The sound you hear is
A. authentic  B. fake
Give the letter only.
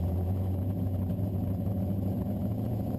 B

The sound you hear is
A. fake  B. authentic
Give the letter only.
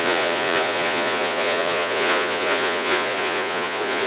A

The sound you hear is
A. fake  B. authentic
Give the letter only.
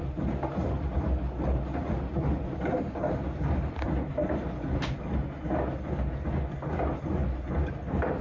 B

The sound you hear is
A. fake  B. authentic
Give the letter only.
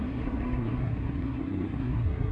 A